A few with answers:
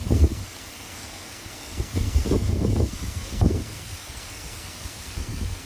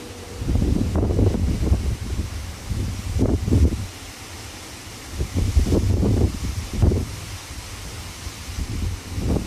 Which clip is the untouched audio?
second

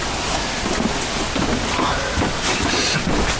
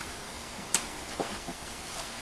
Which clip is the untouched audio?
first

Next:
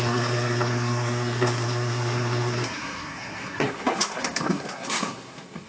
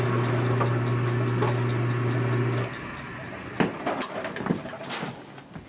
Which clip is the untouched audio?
second